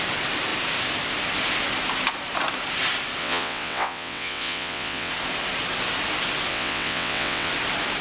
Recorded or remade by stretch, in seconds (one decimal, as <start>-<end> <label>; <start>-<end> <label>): 0.0-3.2 recorded; 3.2-5.1 remade; 5.1-6.5 recorded; 6.5-7.5 remade; 7.5-8.0 recorded